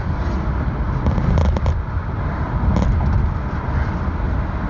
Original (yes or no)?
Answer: yes